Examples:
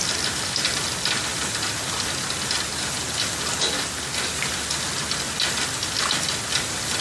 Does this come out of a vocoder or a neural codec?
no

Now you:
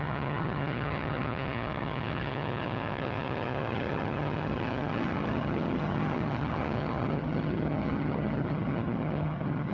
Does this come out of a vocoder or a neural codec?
yes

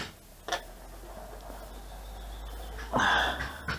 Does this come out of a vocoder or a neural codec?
no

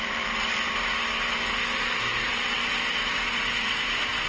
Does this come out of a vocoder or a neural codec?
no